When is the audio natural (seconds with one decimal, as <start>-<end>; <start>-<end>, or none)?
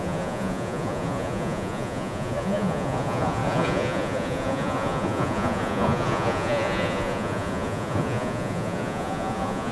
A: none